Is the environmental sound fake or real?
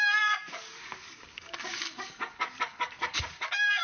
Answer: fake